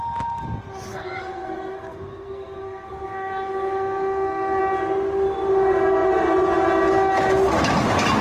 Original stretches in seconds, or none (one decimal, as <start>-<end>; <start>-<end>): 0.0-0.9; 4.6-8.2

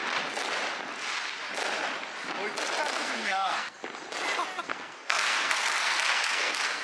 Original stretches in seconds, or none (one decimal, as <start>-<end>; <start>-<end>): 0.0-2.9; 3.8-4.6

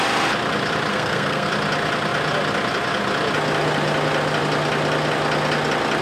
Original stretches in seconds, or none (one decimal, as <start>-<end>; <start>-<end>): 0.0-0.9; 1.5-6.0

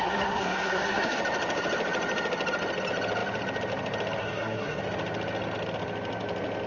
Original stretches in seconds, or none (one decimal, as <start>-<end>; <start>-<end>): 1.2-4.2; 4.8-6.7